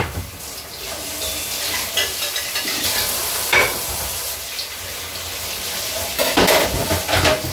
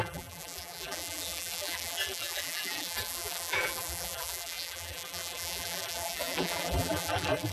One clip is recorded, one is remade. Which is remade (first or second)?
second